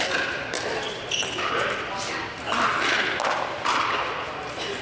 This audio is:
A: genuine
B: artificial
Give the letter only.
A